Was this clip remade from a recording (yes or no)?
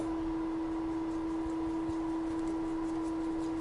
no